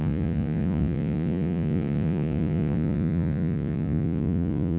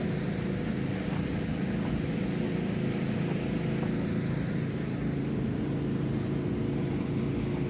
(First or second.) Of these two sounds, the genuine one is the second